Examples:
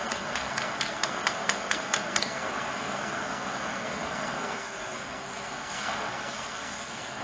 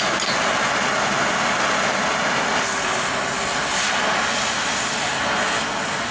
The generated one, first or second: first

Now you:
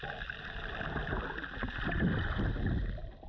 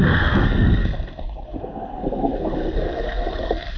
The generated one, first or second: second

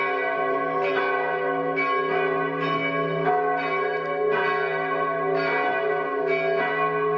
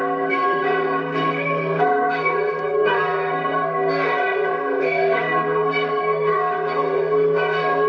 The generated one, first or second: second